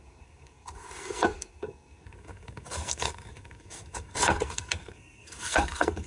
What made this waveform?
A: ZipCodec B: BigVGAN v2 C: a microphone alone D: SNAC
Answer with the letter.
D